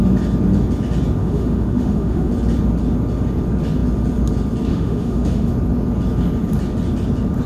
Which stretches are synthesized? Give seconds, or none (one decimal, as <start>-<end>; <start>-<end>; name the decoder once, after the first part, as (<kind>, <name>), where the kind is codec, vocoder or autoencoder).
1.2-2.3 (autoencoder, DAC-VAE); 4.7-5.5